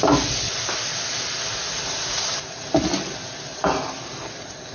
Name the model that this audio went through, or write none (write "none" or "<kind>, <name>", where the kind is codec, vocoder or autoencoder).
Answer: none